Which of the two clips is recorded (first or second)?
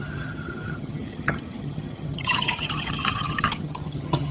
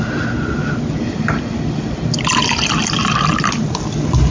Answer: second